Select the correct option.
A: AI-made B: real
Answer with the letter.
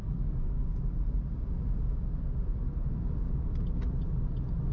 B